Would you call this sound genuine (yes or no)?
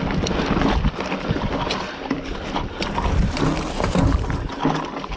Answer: yes